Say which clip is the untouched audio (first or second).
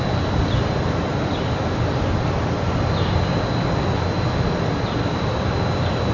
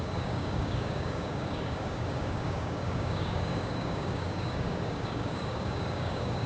first